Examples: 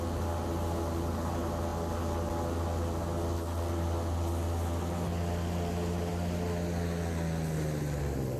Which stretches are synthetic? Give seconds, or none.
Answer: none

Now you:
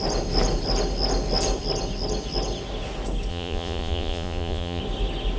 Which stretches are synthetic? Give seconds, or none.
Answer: 3.3-4.8 (vocoder, Vocos)

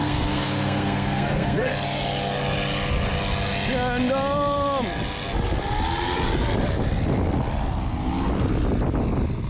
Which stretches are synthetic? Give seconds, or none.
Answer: 0.0-1.7 (codec, SNAC)